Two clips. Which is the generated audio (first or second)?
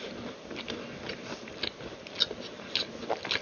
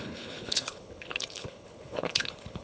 second